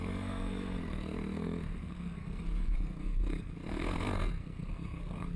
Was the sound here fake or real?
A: fake